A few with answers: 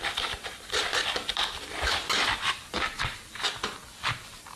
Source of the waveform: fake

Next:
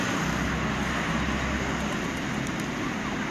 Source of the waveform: real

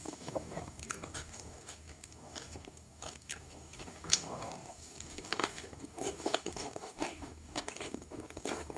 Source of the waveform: fake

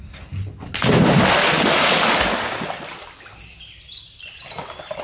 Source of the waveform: real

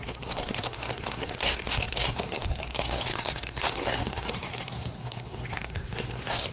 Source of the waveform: fake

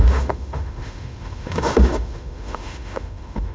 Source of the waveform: fake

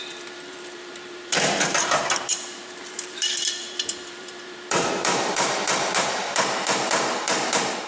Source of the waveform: fake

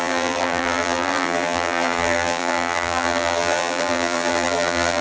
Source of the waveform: fake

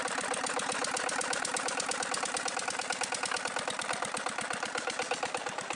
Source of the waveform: real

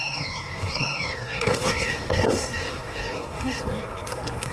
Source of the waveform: fake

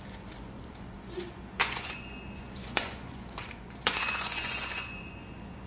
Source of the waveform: fake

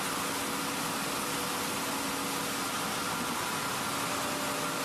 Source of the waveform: real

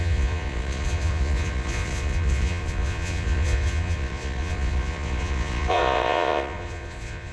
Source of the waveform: fake